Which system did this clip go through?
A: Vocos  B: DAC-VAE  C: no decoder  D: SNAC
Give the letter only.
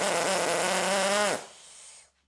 C